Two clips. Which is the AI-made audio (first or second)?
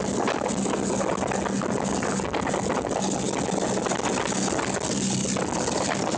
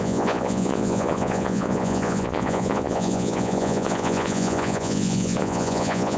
second